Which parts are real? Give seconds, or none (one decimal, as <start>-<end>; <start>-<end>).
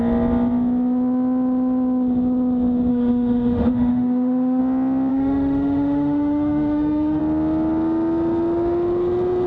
0.0-2.9; 4.6-5.1; 7.2-9.5